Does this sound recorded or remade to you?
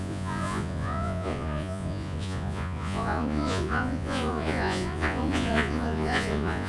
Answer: remade